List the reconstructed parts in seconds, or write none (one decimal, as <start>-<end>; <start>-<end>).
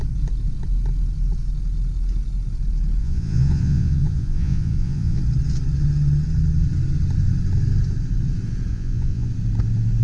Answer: 3.0-5.2; 8.7-9.3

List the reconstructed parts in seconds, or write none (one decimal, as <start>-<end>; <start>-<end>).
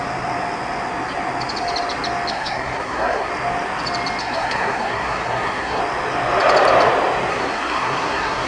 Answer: 2.3-3.3; 4.2-5.8; 7.3-8.5